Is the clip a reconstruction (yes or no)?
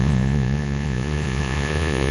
yes